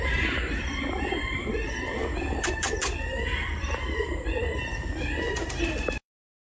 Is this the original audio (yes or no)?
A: no